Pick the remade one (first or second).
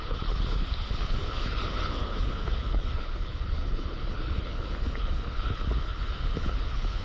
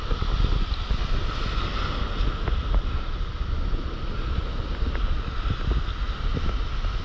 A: first